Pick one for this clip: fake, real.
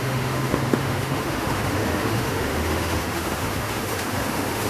fake